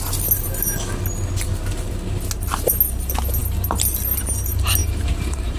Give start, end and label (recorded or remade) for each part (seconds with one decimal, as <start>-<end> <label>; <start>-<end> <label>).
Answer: 0.0-4.8 recorded; 4.8-5.6 remade